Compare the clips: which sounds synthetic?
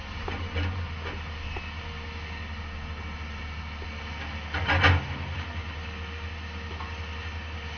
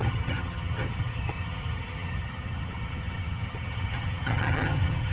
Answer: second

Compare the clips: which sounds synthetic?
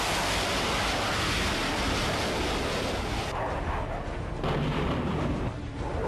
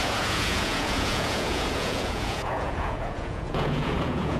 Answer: second